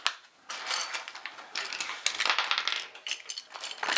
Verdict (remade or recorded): recorded